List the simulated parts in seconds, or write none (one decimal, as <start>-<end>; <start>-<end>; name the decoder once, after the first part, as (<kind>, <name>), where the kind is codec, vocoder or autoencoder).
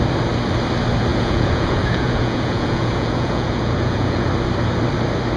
1.1-4.3 (vocoder, Vocos)